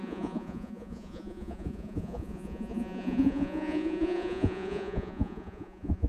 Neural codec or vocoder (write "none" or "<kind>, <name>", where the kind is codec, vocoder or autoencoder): vocoder, Vocos